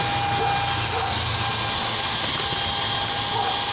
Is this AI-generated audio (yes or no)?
no